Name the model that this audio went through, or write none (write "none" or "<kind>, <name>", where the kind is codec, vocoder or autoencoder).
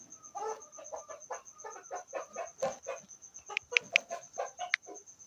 none